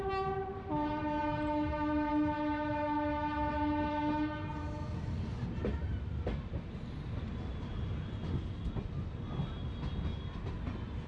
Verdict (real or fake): real